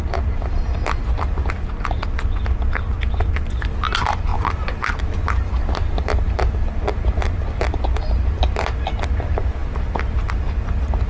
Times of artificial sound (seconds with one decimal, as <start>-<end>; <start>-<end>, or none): none